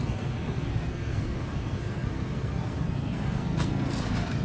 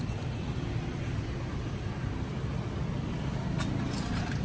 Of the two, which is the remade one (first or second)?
first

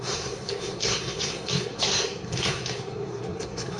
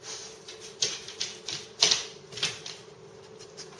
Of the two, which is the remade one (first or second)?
first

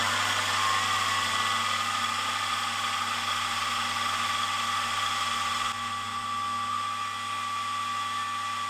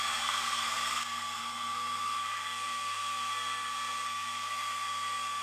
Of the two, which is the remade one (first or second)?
second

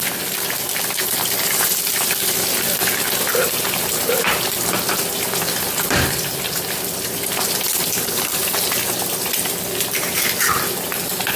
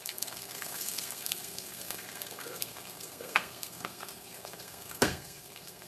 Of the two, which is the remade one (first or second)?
second